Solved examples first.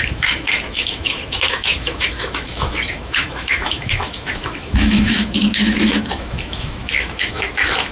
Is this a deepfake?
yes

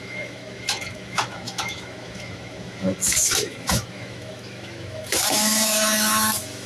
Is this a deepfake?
yes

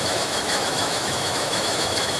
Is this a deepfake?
yes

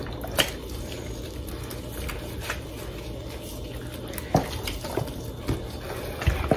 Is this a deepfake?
no